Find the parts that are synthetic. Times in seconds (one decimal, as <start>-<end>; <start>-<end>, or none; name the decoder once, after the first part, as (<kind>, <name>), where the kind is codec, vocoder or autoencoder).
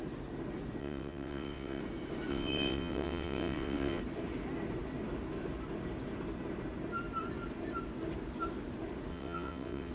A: 0.8-1.8 (vocoder, WaveNeXt); 2.3-4.0; 9.1-9.9